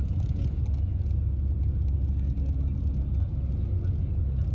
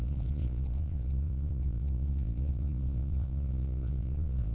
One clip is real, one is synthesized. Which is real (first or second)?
first